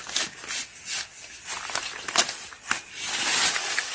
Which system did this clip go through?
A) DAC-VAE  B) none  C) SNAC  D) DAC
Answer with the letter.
B